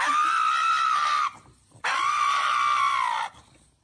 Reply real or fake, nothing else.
real